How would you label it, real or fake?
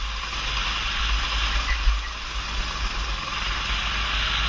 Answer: real